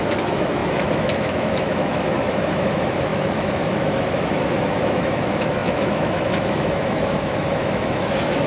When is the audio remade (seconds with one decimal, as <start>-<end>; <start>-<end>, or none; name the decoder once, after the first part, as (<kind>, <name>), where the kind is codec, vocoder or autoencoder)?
0.0-8.5 (autoencoder, DAC-VAE)